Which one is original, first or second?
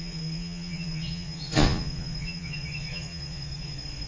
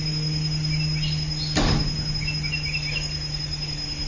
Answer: second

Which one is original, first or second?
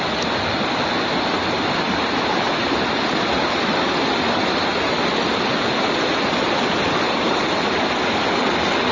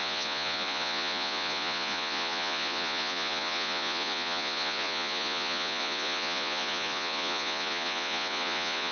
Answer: first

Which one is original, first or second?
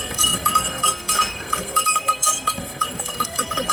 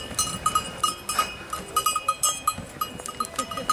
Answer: second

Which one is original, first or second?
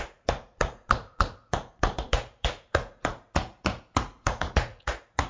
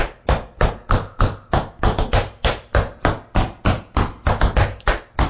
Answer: second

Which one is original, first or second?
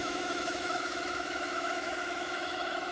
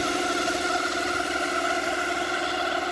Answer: second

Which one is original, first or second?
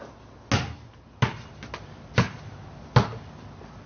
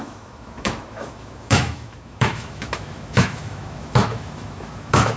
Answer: first